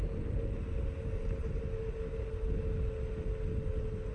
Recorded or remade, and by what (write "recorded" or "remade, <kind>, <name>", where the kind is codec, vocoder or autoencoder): recorded